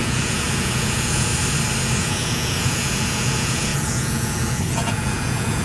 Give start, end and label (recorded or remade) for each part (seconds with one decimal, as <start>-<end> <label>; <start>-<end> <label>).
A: 0.0-1.3 remade; 1.3-2.0 recorded; 2.0-5.6 remade